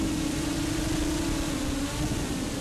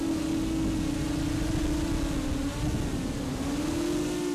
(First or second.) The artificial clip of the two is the first